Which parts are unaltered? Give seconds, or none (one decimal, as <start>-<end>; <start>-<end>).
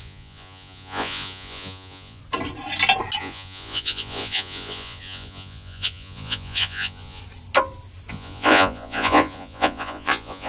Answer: 2.2-3.2; 7.2-8.1